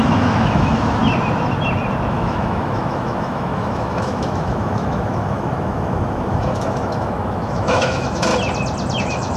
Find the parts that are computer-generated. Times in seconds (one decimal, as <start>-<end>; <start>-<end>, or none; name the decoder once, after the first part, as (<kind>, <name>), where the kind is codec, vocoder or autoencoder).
0.0-1.0 (autoencoder, DAC-VAE); 2.1-8.3; 9.0-9.4